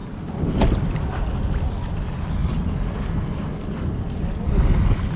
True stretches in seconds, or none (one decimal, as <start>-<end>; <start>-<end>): 0.0-5.2